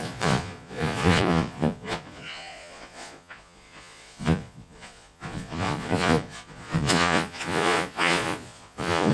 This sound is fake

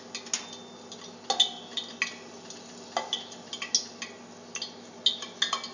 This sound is real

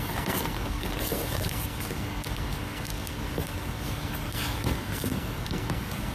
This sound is fake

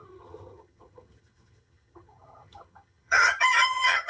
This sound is fake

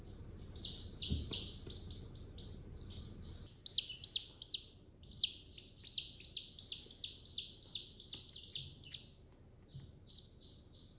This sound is real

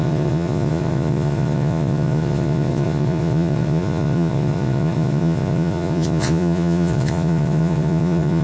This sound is fake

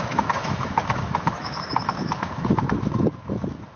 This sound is fake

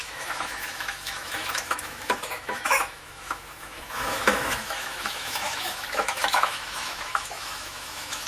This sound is fake